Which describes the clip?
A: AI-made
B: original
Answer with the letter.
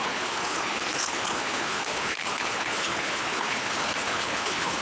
A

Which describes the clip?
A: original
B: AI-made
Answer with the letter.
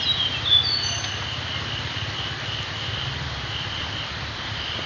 A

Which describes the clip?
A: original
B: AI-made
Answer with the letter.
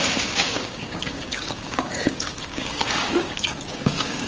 B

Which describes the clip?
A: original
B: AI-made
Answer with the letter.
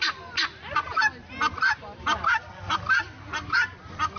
A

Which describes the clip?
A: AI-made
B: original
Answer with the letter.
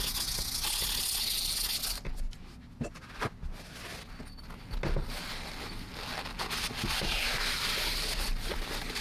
B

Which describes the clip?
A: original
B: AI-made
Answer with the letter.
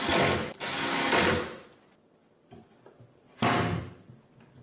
A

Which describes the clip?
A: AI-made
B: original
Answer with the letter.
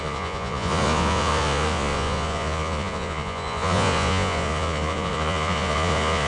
A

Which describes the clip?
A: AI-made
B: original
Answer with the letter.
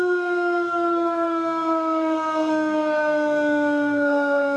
A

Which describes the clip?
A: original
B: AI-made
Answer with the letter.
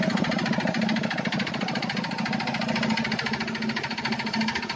A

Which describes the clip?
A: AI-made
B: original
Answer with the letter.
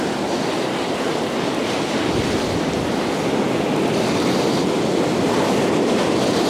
B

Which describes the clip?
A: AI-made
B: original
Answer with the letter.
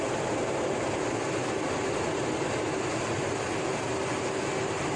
B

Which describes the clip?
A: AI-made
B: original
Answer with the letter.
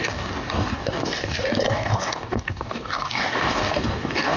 A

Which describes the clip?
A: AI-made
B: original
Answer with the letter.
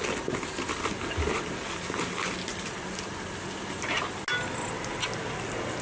B